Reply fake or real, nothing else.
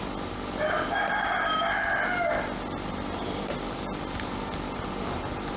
real